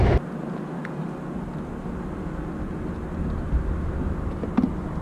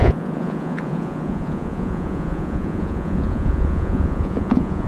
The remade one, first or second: second